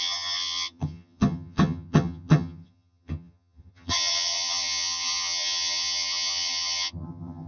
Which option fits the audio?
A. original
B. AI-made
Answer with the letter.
B